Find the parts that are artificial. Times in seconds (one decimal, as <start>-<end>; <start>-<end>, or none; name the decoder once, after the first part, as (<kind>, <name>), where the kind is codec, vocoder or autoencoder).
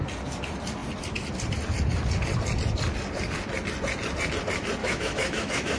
4.8-5.8 (autoencoder, DAC-VAE)